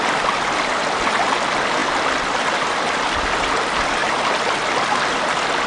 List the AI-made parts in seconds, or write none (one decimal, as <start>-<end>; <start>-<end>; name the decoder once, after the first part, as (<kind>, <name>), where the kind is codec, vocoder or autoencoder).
none